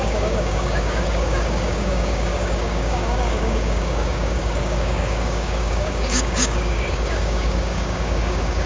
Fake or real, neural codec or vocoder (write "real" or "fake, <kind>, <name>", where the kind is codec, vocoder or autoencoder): fake, codec, DAC